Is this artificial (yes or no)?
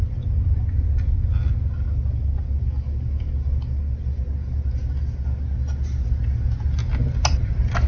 no